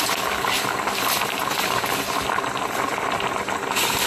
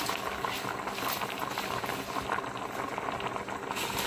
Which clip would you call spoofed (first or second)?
first